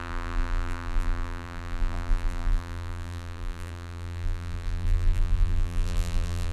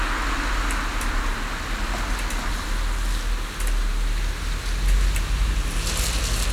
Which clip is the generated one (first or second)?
first